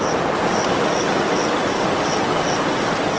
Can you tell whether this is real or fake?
real